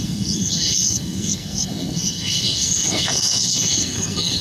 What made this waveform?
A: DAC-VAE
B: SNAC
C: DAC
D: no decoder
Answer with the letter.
B